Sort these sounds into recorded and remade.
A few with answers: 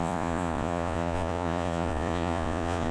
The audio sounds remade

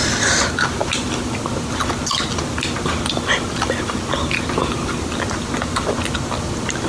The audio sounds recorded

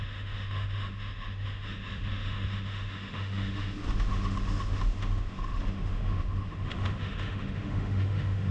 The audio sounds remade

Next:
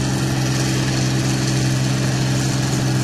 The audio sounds recorded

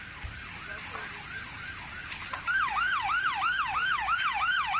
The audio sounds recorded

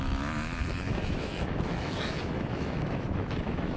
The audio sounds remade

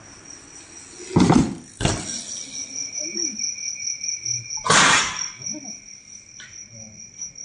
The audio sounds recorded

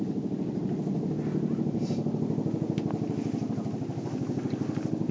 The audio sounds recorded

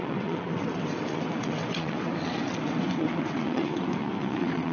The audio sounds remade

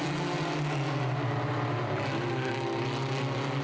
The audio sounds recorded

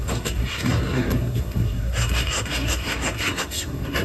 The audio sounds remade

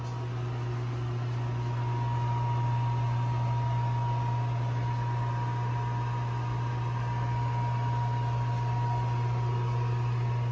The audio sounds recorded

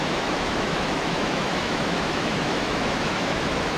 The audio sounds remade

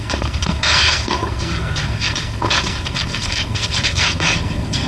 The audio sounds remade